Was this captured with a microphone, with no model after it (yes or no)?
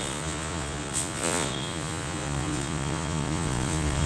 no